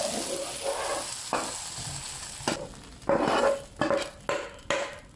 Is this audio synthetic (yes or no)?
no